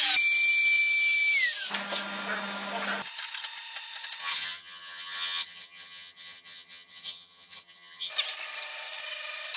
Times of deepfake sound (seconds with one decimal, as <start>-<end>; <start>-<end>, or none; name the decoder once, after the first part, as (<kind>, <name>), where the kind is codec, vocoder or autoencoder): 4.2-8.1 (vocoder, HiFi-GAN)